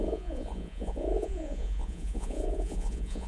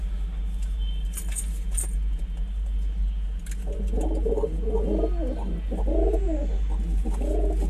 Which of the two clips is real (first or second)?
second